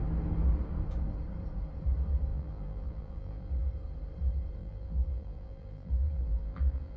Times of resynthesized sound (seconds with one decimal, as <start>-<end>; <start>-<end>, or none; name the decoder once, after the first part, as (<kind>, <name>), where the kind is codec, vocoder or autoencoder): 2.3-3.5 (vocoder, BigVGAN v2); 4.6-7.0